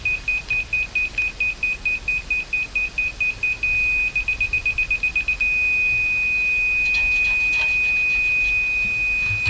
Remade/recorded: recorded